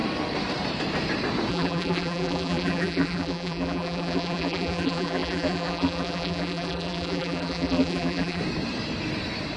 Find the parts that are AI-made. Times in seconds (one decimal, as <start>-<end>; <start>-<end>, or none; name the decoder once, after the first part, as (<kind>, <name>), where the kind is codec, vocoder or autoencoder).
1.5-8.4 (vocoder, BigVGAN v2)